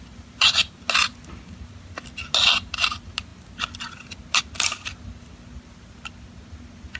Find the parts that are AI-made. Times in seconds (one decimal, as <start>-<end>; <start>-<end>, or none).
none